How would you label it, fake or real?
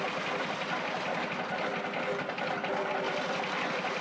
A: real